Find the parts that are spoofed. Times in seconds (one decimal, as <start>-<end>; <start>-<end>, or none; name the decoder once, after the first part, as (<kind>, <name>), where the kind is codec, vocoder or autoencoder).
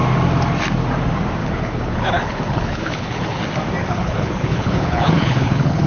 1.4-3.4 (codec, HILCodec); 3.8-5.9